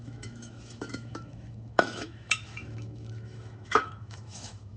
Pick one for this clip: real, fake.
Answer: fake